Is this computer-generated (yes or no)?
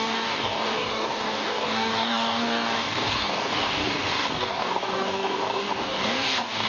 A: yes